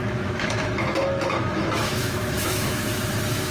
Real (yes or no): no